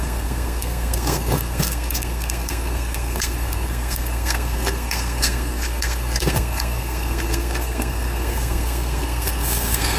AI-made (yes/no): yes